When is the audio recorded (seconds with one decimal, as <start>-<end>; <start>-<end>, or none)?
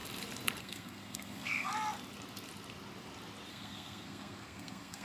0.0-0.6; 1.7-3.5